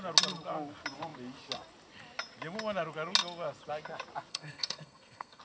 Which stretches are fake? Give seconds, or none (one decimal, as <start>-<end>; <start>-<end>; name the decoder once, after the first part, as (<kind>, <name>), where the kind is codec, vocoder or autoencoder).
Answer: 4.3-5.4 (codec, SNAC)